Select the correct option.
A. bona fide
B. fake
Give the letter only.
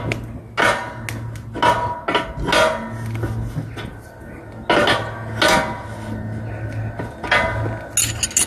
A